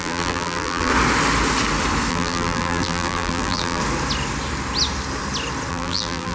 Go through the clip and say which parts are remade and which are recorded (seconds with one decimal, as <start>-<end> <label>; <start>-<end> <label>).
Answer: 0.0-0.9 remade; 0.9-2.1 recorded; 2.1-3.8 remade; 3.8-5.7 recorded; 5.7-6.3 remade